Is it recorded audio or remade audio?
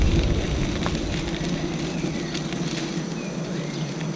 recorded